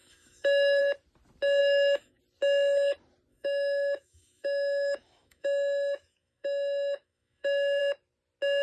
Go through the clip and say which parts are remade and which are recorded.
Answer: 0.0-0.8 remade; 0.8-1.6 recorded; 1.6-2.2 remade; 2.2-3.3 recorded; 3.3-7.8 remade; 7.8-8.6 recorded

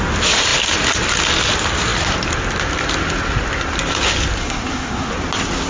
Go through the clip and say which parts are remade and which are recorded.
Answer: 0.0-4.4 recorded; 4.4-5.1 remade; 5.1-5.7 recorded

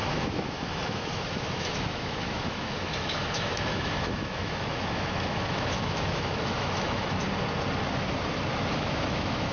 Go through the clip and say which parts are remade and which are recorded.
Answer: 0.0-7.2 remade; 7.2-8.7 recorded; 8.7-9.5 remade